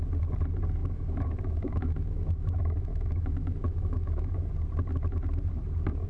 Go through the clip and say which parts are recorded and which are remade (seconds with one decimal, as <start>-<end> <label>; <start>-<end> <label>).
0.0-0.8 recorded; 0.8-4.5 remade; 4.5-6.1 recorded